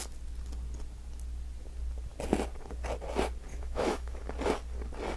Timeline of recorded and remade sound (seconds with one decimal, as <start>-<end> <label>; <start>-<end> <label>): 0.0-3.5 recorded; 3.5-4.2 remade; 4.2-5.2 recorded